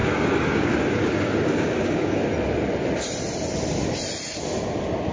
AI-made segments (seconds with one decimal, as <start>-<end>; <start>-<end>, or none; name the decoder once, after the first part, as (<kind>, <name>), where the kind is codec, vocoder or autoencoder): 0.0-2.3 (codec, DAC)